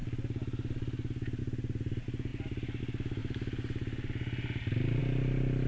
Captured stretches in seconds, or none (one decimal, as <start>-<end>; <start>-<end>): 0.0-5.7